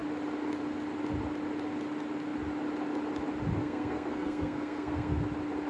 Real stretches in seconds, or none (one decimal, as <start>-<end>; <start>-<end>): 0.0-3.6; 5.2-5.7